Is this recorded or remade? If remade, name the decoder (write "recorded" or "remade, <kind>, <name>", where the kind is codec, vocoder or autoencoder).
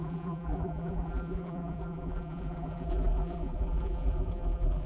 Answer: remade, vocoder, BigVGAN v2